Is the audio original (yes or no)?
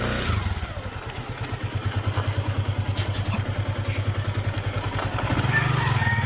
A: yes